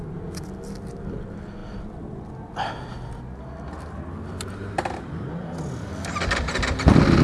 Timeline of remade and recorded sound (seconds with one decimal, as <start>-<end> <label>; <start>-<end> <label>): 0.0-7.2 recorded